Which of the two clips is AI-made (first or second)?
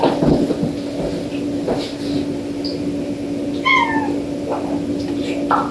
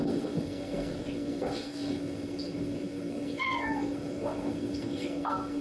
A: second